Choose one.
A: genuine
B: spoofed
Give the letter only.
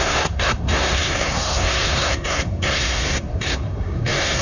B